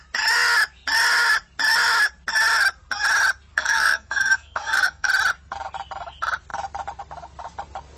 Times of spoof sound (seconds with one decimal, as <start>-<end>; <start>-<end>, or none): 3.5-5.1